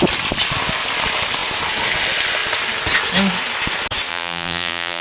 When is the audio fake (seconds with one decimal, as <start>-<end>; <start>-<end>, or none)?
4.1-5.0

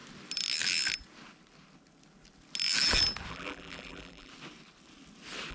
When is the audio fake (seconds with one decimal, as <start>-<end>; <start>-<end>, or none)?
3.3-4.3

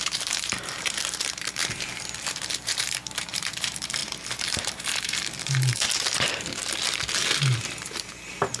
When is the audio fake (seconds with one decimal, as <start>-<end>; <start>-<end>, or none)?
0.0-1.6; 2.2-6.6; 7.8-8.6

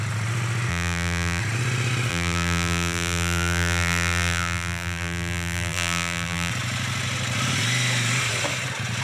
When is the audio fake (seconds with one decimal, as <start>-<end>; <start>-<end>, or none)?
0.7-1.4; 2.1-6.5

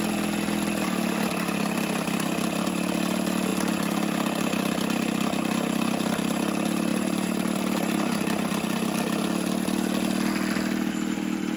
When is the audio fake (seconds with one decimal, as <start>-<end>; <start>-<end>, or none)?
6.9-8.2

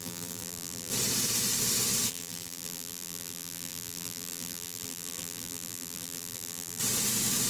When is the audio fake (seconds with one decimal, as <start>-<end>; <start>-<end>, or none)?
0.0-0.9; 2.1-6.8

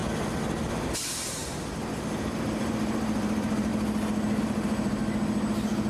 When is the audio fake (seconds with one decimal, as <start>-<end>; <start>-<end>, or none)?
0.7-3.7; 4.4-5.0